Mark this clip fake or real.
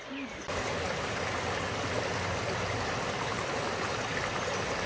real